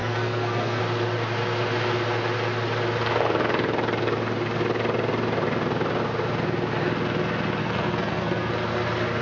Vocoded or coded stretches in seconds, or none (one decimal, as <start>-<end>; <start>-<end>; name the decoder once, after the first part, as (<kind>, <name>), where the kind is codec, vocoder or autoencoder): 0.0-0.8 (codec, SNAC); 7.6-8.5